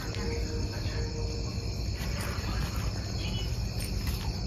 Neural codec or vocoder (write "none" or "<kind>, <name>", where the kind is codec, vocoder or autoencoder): none